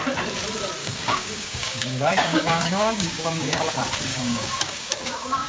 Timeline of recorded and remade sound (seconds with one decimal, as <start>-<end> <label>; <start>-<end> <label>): 0.0-0.8 recorded; 0.8-3.6 remade; 3.6-4.1 recorded; 4.1-5.5 remade